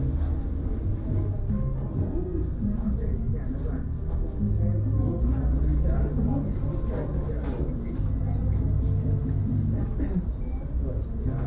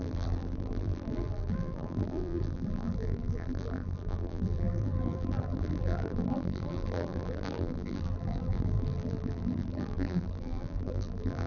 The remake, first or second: second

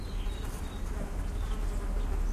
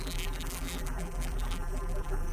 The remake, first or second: second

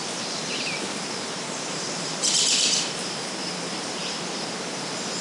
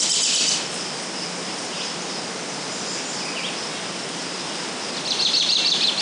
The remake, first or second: first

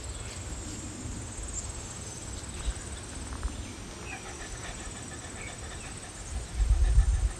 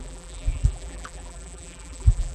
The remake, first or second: second